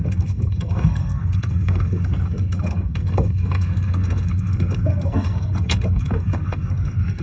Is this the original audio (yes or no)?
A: no